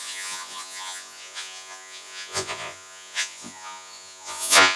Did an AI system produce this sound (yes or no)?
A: yes